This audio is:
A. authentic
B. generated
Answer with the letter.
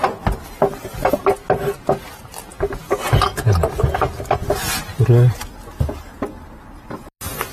A